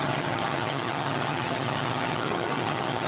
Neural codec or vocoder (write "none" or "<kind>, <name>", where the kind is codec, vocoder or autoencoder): vocoder, HiFi-GAN